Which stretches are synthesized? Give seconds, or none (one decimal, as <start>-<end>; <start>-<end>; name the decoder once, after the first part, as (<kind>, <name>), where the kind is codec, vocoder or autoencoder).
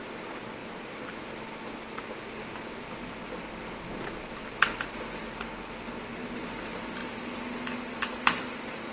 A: none